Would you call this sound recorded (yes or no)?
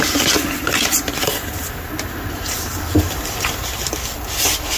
yes